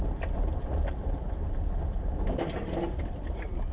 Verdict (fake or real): fake